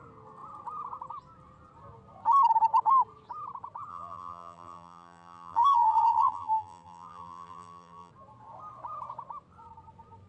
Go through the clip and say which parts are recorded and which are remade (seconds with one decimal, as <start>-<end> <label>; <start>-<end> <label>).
0.0-3.9 recorded; 3.9-8.1 remade; 8.1-10.3 recorded